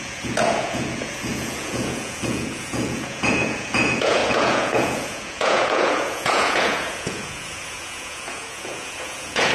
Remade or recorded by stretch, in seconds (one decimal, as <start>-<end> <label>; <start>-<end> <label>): 0.0-9.5 remade